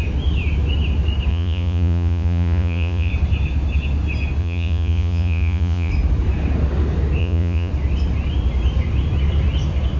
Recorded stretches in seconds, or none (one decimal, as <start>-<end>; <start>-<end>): 0.0-1.3; 3.1-4.4; 5.9-7.2; 7.7-10.0